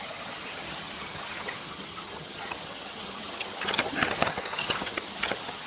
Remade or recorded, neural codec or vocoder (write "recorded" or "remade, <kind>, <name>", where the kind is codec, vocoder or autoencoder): remade, vocoder, HiFi-GAN